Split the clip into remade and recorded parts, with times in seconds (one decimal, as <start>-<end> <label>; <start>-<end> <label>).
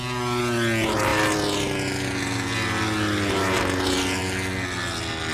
0.0-5.3 recorded